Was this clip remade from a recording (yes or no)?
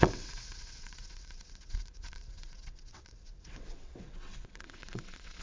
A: yes